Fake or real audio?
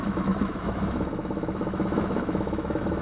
fake